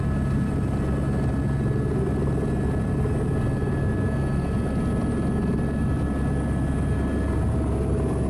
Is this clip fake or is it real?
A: real